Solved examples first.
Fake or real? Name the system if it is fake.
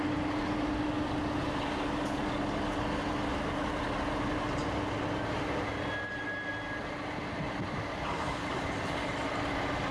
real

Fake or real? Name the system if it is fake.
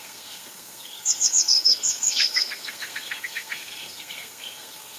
fake, codec, SNAC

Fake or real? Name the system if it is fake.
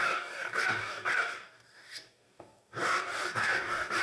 fake, codec, DAC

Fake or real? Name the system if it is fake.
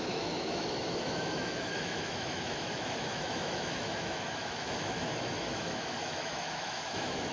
fake, autoencoder, DAC-VAE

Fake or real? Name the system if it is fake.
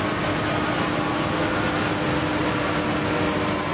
real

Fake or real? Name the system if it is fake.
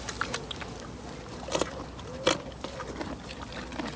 real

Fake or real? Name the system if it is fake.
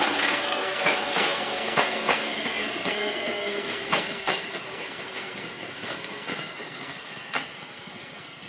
fake, codec, SNAC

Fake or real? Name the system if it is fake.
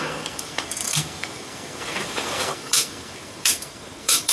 fake, codec, SNAC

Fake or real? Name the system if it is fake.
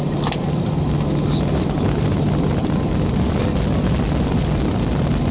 fake, vocoder, BigVGAN v2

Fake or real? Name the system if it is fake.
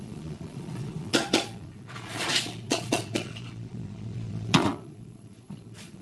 fake, vocoder, Vocos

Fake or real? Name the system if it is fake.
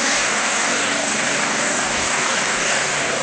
fake, codec, DAC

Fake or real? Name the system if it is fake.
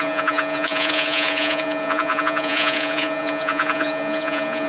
fake, vocoder, Vocos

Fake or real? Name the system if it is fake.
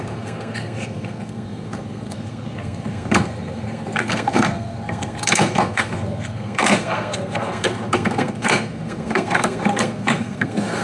fake, codec, SNAC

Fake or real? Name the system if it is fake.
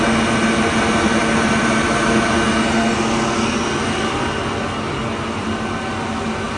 real